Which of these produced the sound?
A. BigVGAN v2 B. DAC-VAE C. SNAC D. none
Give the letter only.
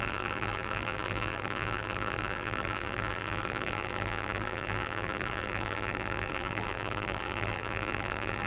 A